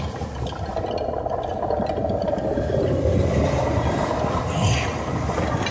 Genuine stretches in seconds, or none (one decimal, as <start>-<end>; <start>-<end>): 0.0-5.7